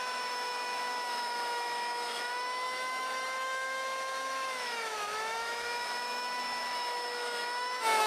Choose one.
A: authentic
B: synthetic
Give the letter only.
B